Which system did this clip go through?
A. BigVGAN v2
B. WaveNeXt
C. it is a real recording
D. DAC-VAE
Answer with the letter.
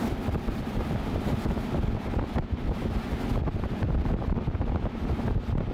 A